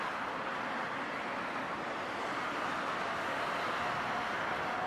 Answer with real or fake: real